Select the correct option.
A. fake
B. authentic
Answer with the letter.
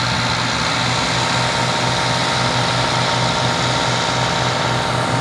B